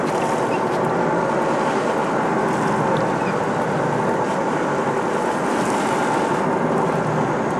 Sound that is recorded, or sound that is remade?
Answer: recorded